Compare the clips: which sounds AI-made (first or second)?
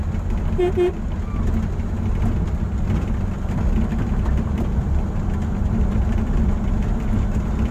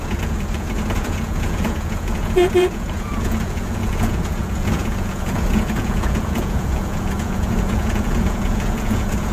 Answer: second